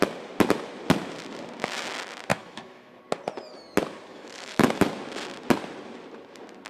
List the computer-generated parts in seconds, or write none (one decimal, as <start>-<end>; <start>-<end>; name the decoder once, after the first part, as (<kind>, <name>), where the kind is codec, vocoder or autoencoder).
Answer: 2.3-3.0 (autoencoder, DAC-VAE); 4.1-4.9